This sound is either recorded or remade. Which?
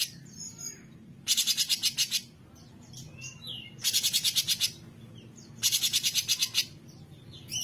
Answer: recorded